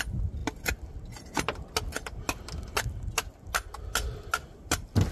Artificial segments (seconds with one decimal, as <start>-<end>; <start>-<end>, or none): none